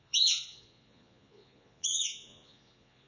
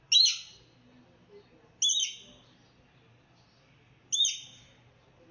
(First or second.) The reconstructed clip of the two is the first